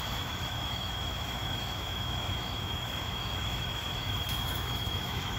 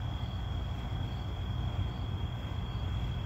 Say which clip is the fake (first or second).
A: first